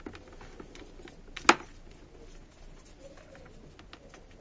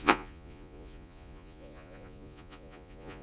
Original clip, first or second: first